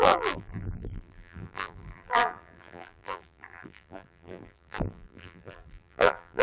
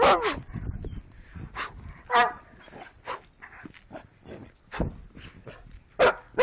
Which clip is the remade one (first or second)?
first